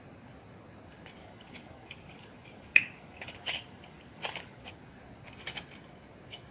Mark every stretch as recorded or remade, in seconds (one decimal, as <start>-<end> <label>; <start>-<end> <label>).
0.0-1.2 recorded; 1.2-4.7 remade; 4.7-6.5 recorded